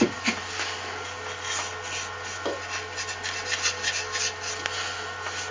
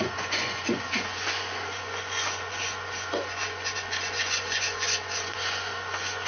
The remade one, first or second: second